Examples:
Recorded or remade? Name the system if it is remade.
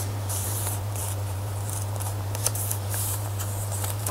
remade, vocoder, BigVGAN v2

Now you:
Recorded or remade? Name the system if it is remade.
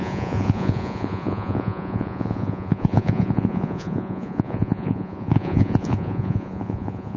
remade, vocoder, Vocos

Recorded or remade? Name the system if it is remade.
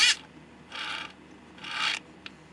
remade, vocoder, BigVGAN v2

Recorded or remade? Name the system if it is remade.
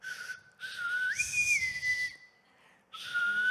recorded